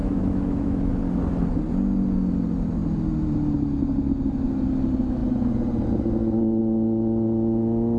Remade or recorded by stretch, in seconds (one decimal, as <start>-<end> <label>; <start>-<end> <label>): 0.0-0.9 remade; 0.9-8.0 recorded